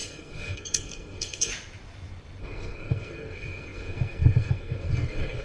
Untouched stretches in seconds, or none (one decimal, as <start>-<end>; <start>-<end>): 1.5-2.4